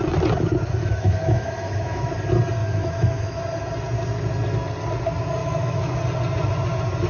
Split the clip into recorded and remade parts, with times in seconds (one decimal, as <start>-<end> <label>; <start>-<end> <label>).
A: 0.0-0.8 recorded; 0.8-2.1 remade; 2.1-2.6 recorded; 2.6-3.4 remade; 3.4-5.4 recorded; 5.4-6.0 remade; 6.0-7.1 recorded